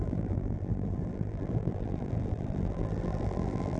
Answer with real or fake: fake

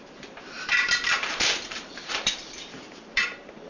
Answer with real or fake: fake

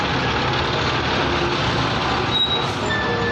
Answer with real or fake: real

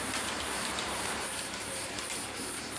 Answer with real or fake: fake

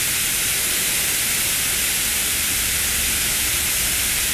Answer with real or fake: fake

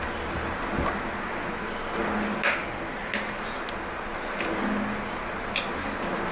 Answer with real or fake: real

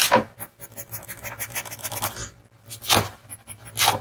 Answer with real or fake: real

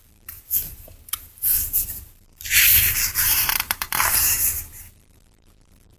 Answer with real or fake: fake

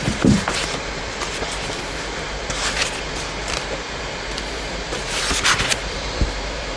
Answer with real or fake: fake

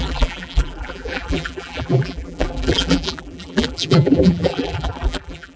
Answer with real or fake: fake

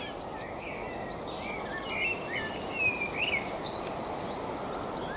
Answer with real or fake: real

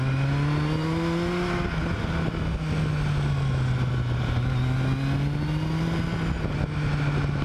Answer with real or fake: real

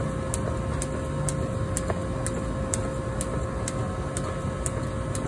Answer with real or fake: real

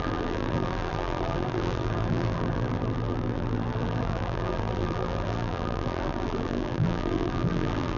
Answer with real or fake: fake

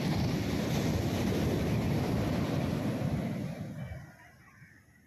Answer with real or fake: real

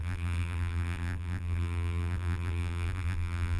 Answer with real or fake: fake